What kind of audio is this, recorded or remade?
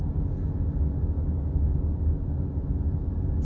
recorded